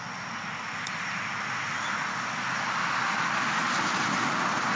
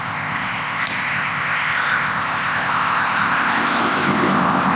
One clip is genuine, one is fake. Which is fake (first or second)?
second